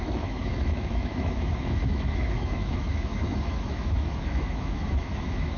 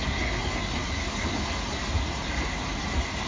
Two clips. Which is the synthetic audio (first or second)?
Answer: first